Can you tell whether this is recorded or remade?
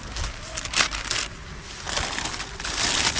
recorded